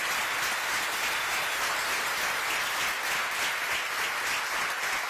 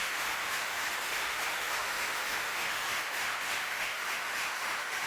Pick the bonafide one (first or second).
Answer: first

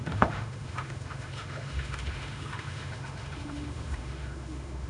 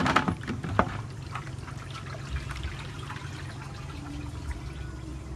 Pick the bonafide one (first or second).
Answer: second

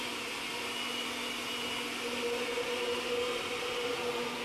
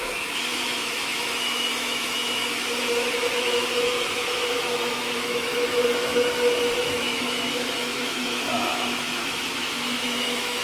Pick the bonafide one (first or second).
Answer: first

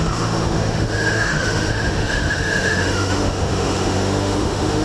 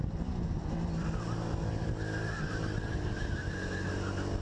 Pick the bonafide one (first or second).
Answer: second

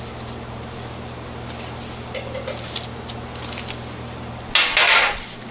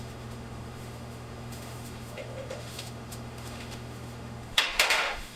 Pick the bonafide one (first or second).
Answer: first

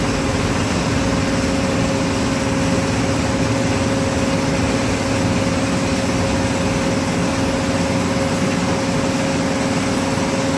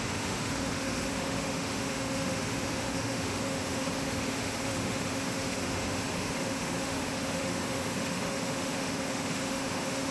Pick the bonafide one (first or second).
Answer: first